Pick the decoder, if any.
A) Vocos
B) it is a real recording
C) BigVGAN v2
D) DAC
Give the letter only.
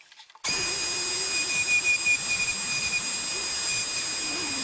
B